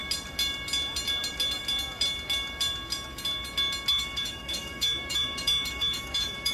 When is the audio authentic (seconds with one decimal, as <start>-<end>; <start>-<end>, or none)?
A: 0.0-3.9

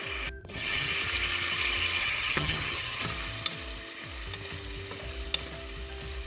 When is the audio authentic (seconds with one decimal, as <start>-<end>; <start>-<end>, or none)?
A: 0.0-0.4; 0.9-2.0; 3.0-6.3

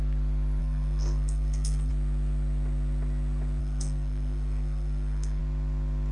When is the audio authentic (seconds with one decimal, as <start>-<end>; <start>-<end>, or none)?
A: 0.0-0.6; 1.9-3.6; 5.4-6.1

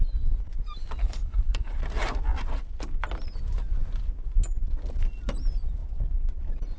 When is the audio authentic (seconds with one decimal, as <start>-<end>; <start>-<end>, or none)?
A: 0.0-1.0; 1.8-6.8